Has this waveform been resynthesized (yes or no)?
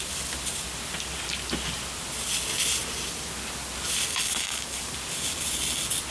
no